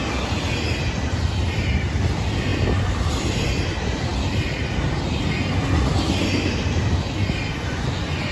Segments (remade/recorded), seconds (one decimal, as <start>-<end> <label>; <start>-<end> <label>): 0.0-7.7 recorded; 7.7-8.3 remade